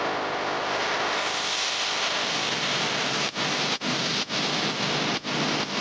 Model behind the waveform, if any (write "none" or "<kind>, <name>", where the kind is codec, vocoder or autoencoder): none